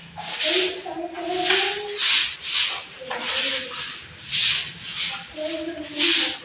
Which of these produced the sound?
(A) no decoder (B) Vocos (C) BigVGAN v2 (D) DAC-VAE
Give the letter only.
A